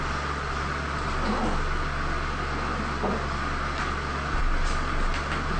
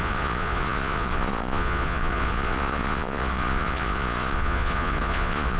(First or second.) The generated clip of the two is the second